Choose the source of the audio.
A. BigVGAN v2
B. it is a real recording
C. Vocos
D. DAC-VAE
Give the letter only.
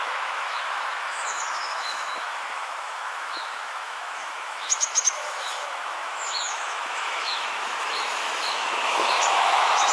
D